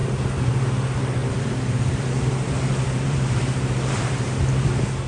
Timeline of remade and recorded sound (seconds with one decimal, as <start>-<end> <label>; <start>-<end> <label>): 0.0-0.5 remade; 0.5-1.2 recorded; 1.2-4.3 remade; 4.3-5.1 recorded